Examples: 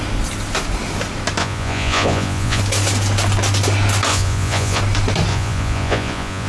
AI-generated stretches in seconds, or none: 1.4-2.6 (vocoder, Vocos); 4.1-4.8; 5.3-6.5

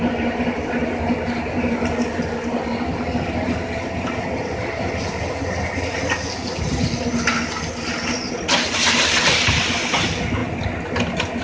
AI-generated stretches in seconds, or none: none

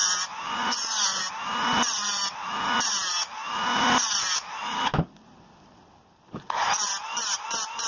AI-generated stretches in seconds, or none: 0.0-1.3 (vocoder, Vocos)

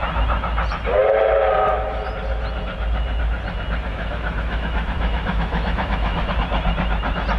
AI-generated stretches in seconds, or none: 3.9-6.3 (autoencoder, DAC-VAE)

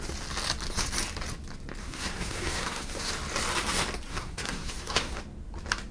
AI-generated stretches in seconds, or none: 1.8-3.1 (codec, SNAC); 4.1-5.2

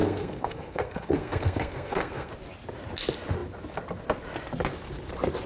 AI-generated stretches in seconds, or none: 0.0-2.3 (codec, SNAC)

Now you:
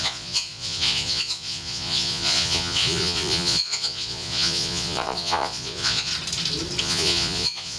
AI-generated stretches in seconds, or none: 0.0-6.1 (vocoder, Vocos); 6.8-7.8

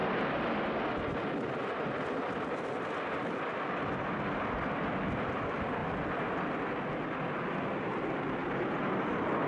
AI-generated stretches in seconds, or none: none